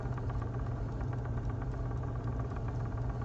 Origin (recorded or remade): remade